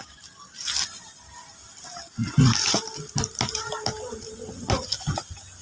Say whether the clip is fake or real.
real